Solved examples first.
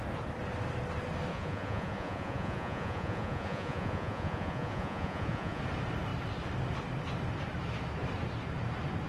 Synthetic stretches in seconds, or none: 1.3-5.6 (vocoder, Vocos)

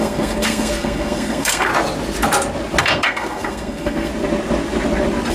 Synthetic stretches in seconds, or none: 0.0-1.7 (codec, SNAC); 2.8-4.1

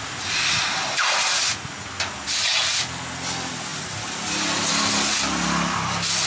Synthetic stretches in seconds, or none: none

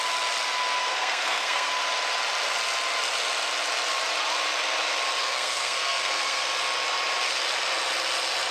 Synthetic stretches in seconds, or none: 0.8-1.7 (codec, SNAC); 5.2-6.4

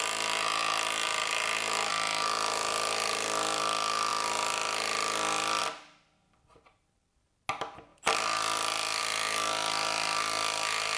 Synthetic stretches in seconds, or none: 7.9-9.0 (vocoder, BigVGAN v2)

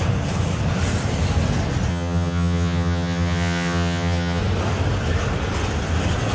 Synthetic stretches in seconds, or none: 1.9-4.4 (vocoder, HiFi-GAN)

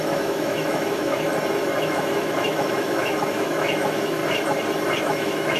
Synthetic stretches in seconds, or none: 0.0-1.3 (autoencoder, DAC-VAE); 1.8-4.2; 5.0-5.6